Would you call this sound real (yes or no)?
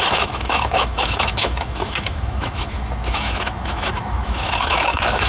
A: no